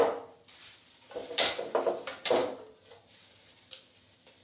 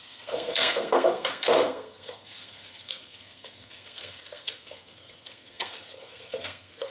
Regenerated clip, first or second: second